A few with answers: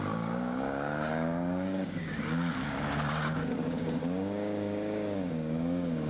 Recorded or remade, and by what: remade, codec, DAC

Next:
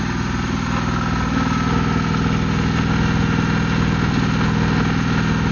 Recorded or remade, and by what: recorded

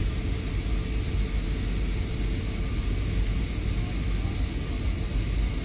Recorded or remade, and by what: recorded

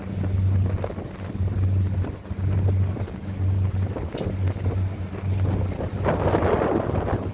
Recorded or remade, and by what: recorded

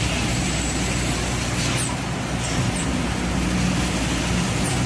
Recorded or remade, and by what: recorded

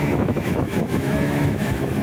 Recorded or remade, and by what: remade, autoencoder, DAC-VAE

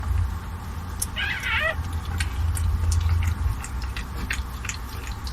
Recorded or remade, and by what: recorded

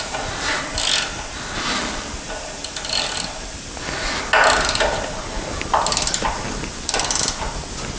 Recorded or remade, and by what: recorded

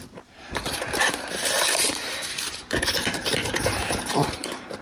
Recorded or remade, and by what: remade, vocoder, BigVGAN v2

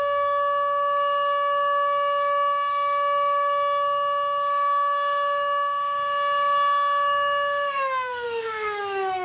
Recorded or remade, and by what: remade, autoencoder, DAC-VAE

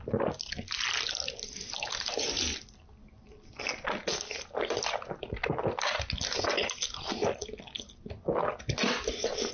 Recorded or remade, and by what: recorded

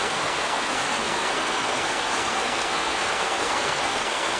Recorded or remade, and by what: remade, codec, SNAC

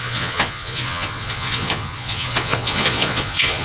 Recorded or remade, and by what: remade, vocoder, Vocos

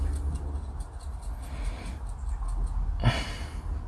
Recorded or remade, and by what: recorded